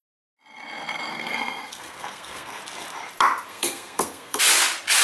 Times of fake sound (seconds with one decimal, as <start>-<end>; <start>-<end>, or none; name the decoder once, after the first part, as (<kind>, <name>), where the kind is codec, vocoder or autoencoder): 1.1-2.6 (codec, SNAC); 3.5-4.4